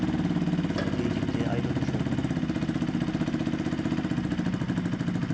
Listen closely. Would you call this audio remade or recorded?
recorded